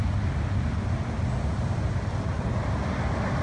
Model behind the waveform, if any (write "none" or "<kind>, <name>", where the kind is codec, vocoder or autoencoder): none